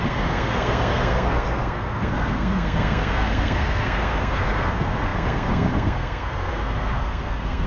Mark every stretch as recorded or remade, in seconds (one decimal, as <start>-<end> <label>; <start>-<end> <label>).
0.0-7.7 remade